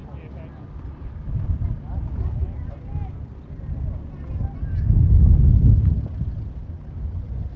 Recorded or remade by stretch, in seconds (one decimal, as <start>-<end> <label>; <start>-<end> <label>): 0.0-7.6 recorded